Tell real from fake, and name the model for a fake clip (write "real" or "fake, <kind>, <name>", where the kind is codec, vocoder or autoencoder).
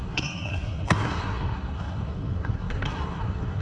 fake, codec, SNAC